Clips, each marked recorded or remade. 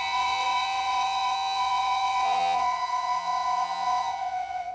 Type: remade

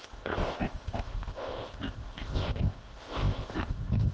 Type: remade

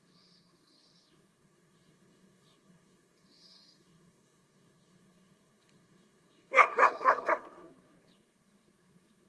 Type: remade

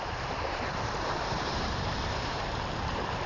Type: remade